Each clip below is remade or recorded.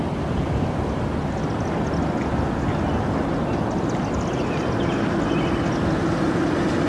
recorded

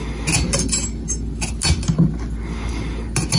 recorded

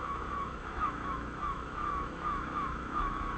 remade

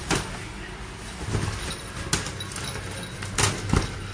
recorded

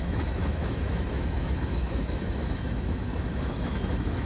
remade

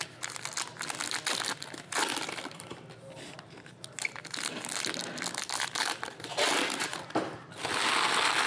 recorded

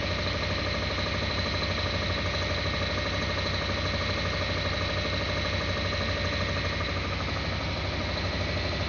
recorded